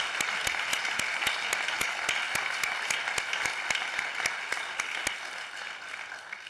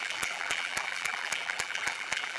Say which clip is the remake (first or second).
second